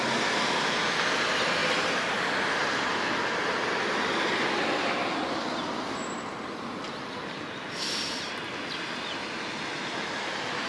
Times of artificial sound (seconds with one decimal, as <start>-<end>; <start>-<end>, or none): none